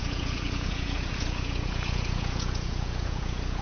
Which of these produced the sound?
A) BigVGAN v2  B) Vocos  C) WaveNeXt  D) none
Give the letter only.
B